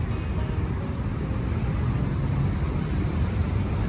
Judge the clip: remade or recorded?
recorded